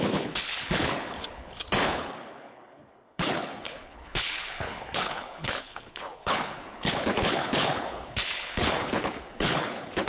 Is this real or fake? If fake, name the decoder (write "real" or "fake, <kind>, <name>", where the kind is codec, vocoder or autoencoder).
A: fake, codec, HILCodec